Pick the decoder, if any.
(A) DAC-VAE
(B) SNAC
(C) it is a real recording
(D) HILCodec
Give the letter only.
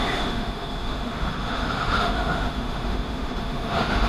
A